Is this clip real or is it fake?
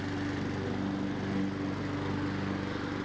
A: real